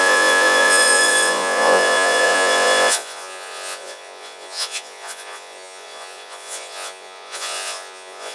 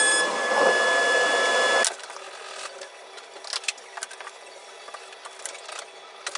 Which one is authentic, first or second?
second